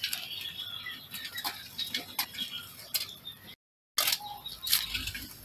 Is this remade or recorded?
recorded